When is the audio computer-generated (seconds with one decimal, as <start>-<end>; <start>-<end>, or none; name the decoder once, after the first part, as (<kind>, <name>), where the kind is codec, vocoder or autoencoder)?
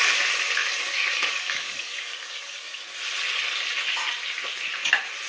0.6-2.8 (codec, DAC)